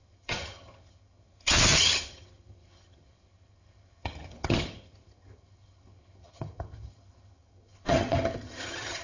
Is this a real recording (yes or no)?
no